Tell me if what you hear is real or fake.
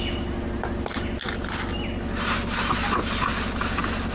real